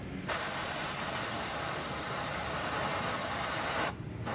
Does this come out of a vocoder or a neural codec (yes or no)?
yes